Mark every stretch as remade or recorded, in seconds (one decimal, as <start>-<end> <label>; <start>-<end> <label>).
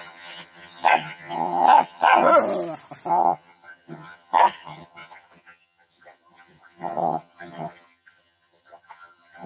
0.0-2.3 remade; 2.3-3.1 recorded; 3.1-9.5 remade